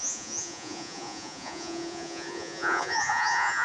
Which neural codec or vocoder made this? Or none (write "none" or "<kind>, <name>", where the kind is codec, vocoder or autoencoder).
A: vocoder, Vocos